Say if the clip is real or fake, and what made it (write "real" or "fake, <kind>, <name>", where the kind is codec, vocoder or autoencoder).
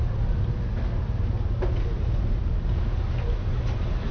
real